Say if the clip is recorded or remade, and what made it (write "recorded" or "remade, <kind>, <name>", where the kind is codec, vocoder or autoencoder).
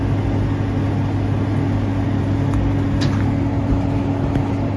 recorded